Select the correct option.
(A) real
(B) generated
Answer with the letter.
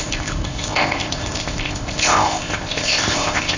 B